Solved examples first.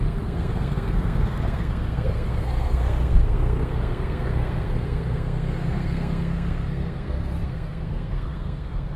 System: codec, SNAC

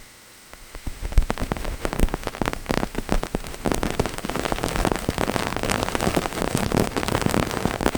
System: autoencoder, DAC-VAE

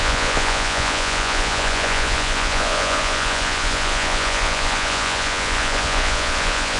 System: vocoder, Vocos